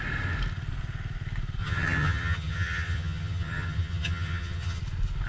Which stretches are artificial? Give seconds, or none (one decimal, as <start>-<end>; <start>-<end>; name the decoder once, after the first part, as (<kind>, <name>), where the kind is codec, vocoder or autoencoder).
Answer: 1.6-4.8 (vocoder, HiFi-GAN)